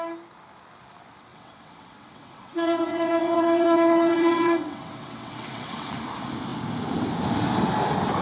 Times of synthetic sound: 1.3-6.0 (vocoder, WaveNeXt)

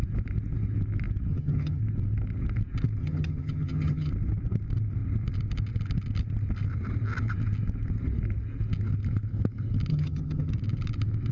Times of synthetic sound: 1.3-1.8 (vocoder, HiFi-GAN); 3.0-4.1; 9.9-10.5